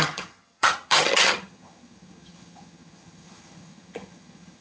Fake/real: fake